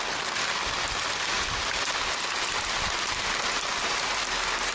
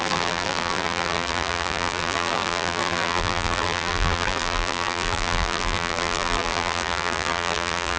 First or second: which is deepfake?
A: second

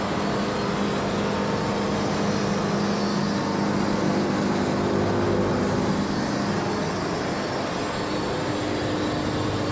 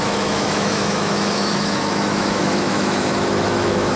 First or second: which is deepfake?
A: second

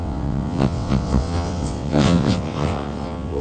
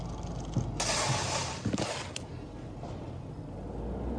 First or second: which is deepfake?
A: first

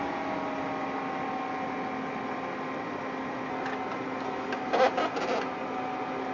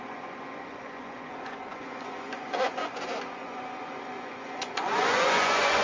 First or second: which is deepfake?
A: second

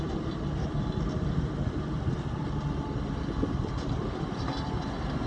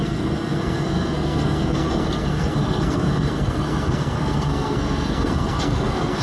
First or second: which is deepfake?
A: second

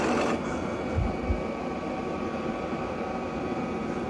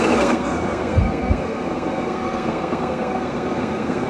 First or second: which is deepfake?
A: second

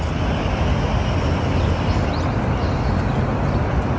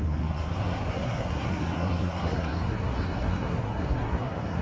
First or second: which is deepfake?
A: second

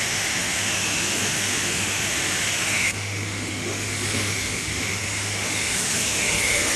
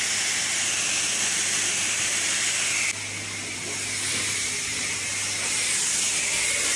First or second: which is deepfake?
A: first